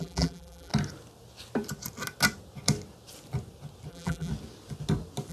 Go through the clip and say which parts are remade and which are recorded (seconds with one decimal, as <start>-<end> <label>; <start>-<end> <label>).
0.0-0.7 remade; 0.7-3.9 recorded; 3.9-4.3 remade; 4.3-5.3 recorded